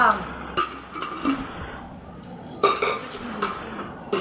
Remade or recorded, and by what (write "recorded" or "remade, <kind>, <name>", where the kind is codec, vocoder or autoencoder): recorded